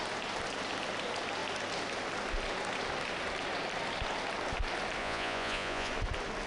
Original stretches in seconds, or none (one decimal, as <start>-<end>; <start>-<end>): 0.0-5.0; 5.9-6.5